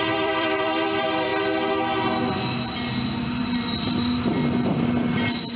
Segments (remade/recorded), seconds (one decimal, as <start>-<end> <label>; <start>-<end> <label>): 0.0-1.3 remade; 1.3-3.4 recorded; 3.4-4.4 remade; 4.4-5.6 recorded